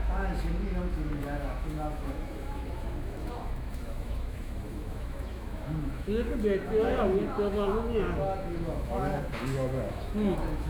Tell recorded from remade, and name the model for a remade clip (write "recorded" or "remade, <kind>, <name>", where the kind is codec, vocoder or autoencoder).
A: remade, autoencoder, DAC-VAE